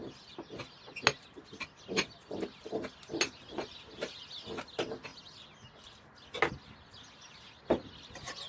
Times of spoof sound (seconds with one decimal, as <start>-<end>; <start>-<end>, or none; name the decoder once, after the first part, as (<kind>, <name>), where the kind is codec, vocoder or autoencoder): none